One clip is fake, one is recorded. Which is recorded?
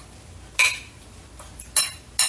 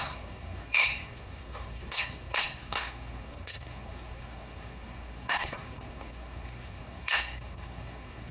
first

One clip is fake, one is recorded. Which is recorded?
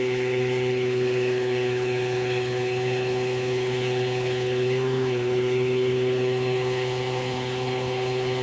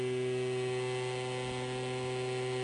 second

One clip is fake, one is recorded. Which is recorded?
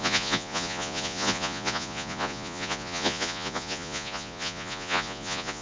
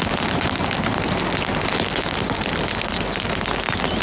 second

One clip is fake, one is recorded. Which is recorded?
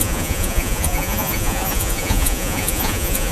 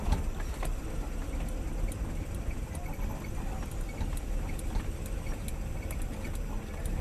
second